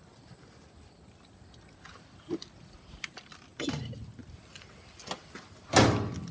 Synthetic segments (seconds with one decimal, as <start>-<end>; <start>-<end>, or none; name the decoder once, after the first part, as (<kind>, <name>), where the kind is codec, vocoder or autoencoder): none